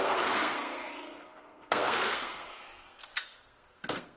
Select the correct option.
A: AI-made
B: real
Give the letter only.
A